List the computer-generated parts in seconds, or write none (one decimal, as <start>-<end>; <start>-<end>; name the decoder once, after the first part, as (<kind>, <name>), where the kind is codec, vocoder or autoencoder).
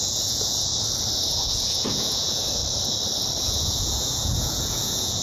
0.0-0.7 (vocoder, Vocos); 1.3-2.6; 3.4-5.2